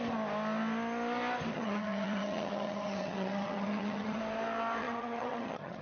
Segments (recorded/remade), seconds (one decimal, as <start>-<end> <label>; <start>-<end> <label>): 0.0-1.5 recorded; 1.5-4.2 remade; 4.2-4.8 recorded; 4.8-5.8 remade